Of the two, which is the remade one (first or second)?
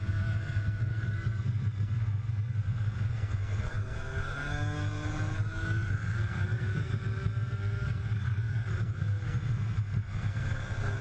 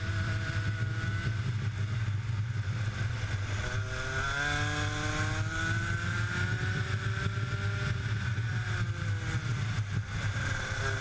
first